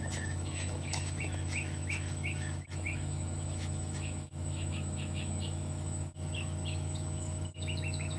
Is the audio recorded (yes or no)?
no